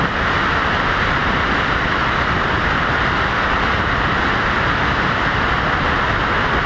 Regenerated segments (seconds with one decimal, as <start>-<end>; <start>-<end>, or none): none